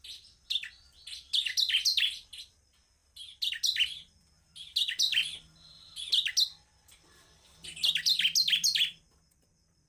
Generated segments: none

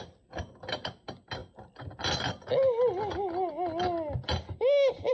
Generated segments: none

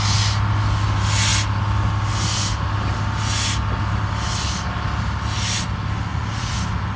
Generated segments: 6.1-6.6 (vocoder, Vocos)